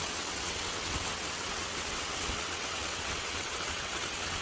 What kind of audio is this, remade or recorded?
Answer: remade